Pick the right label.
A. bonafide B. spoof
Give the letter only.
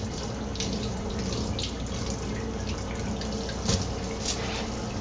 A